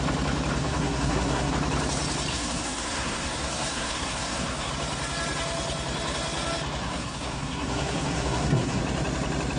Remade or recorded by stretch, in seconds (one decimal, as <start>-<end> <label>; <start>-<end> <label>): 0.0-0.6 recorded; 0.6-1.5 remade; 1.5-2.3 recorded; 2.3-4.7 remade; 4.7-6.8 recorded; 6.8-8.8 remade; 8.8-9.6 recorded